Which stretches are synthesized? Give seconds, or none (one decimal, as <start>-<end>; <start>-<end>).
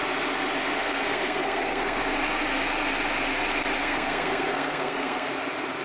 0.8-2.0; 3.8-5.3